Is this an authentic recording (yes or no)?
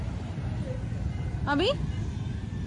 yes